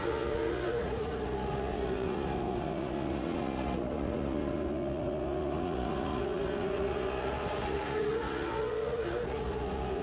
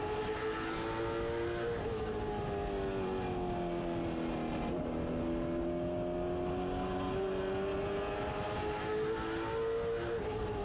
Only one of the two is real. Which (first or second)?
second